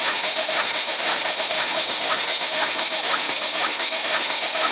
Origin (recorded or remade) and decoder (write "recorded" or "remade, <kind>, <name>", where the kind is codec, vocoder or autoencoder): remade, autoencoder, DAC-VAE